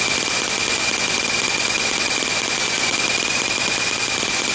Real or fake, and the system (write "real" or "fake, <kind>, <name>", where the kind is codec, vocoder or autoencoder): fake, vocoder, Vocos